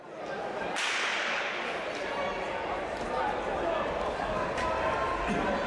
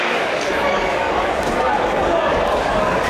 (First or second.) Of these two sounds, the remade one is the second